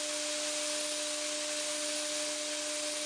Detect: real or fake real